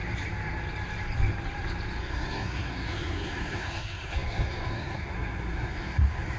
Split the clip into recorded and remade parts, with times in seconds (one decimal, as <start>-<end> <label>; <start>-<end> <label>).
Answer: 0.0-2.0 recorded; 2.0-6.4 remade

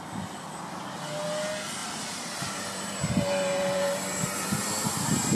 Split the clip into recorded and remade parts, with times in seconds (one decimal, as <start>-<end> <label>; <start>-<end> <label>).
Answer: 0.0-1.8 recorded; 1.8-5.3 remade

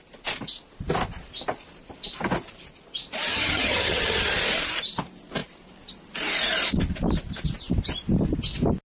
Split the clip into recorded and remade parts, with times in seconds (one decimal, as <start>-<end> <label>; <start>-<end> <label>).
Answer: 0.0-3.3 recorded; 3.3-4.2 remade; 4.2-8.9 recorded